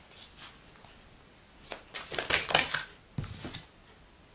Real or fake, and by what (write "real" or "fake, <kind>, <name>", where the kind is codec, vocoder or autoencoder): real